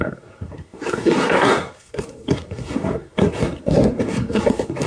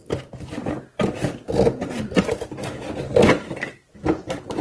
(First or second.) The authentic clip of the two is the second